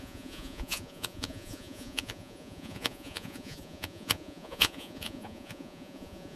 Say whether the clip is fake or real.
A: fake